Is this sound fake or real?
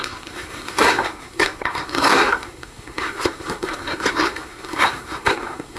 fake